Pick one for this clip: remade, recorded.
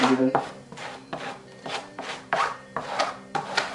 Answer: remade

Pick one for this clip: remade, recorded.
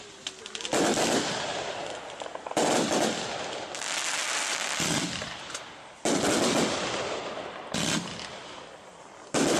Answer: recorded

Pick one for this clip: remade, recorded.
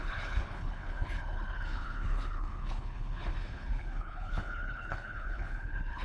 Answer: remade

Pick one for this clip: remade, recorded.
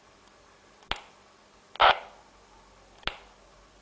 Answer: recorded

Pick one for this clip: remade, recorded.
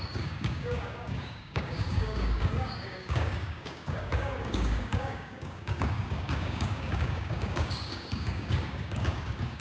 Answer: remade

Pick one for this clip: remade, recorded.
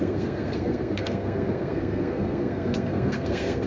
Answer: remade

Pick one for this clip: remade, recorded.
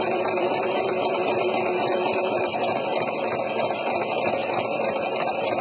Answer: remade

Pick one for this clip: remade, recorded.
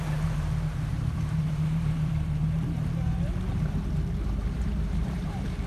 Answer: remade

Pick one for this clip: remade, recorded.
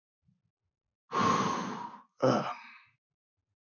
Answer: recorded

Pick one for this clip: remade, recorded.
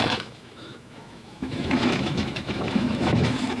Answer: remade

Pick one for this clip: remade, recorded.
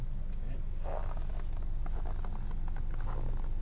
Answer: recorded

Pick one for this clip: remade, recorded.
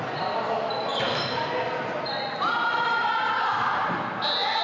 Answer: recorded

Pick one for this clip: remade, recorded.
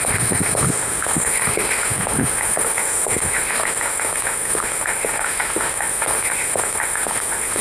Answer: remade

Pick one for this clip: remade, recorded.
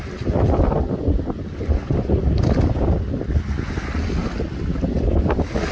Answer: recorded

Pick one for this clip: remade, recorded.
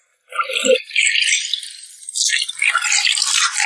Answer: recorded